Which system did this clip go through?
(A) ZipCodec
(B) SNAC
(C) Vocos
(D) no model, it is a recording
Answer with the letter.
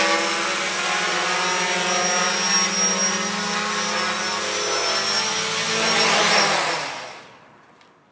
D